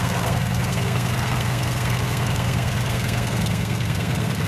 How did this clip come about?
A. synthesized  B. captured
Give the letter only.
A